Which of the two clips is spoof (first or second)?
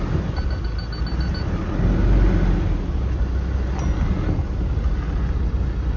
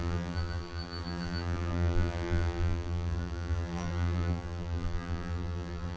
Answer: second